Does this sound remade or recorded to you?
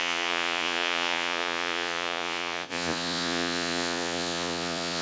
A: remade